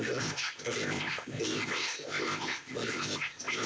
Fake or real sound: fake